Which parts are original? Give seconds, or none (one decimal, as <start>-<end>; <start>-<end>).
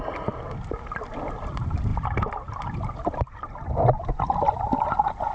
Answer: 0.0-5.3